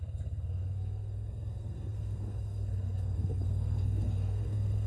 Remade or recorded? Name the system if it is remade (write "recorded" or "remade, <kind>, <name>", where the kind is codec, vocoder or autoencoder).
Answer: remade, codec, SNAC